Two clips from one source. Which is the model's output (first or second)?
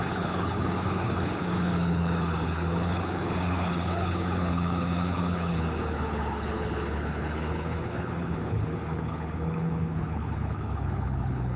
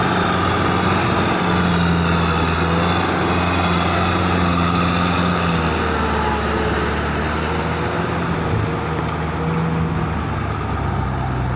first